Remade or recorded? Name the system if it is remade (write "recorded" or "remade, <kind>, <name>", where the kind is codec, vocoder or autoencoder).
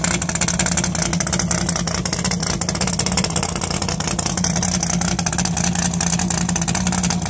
recorded